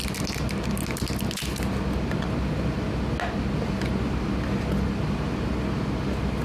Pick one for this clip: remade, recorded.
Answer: recorded